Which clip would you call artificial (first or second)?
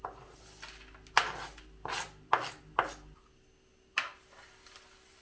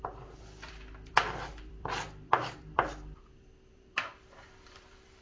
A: second